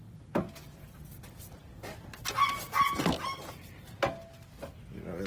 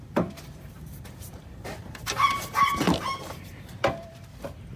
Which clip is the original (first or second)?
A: first